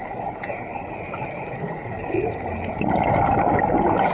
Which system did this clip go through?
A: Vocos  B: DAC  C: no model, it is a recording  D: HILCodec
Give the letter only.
C